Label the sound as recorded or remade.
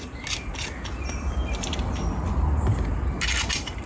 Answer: recorded